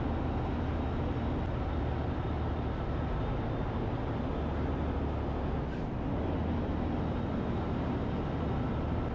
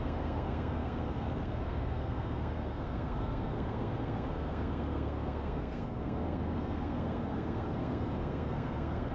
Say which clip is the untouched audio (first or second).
first